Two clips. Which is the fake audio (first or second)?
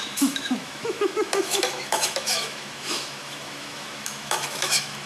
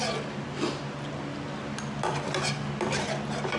first